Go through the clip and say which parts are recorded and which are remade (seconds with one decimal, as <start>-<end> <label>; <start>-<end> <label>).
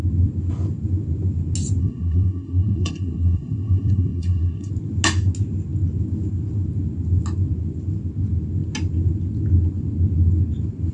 0.0-1.8 recorded; 1.8-4.7 remade; 4.7-10.9 recorded